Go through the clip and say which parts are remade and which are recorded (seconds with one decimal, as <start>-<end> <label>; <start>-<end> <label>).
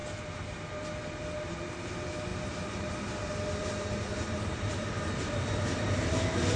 0.0-2.3 recorded; 2.3-2.9 remade; 2.9-3.6 recorded; 3.6-5.3 remade; 5.3-6.6 recorded